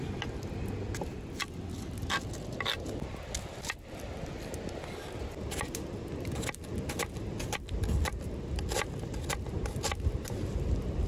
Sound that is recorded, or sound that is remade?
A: recorded